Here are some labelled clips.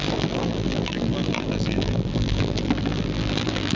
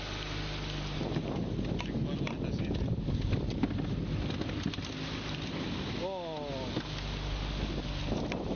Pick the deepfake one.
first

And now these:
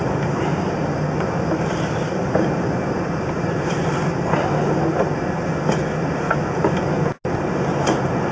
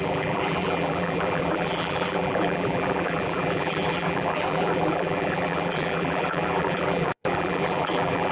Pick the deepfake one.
second